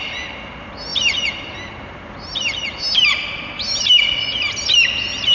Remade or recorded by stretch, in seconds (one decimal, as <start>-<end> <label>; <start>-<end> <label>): 0.0-0.9 recorded; 0.9-4.0 remade; 4.0-5.3 recorded